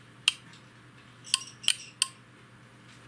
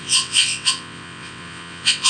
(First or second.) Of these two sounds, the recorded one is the first